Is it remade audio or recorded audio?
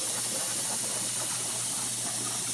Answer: recorded